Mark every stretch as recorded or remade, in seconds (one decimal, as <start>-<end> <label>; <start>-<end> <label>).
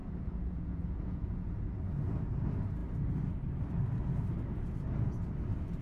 0.0-1.6 remade; 1.6-5.8 recorded